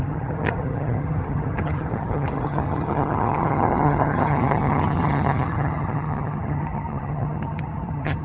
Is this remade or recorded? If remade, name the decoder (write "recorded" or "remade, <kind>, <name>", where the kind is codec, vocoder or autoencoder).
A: remade, vocoder, HiFi-GAN